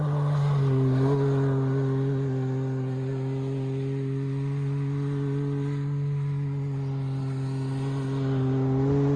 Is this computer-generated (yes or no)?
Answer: no